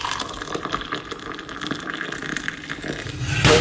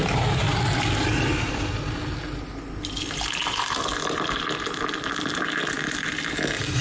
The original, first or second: second